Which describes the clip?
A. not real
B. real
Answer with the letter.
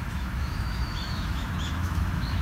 A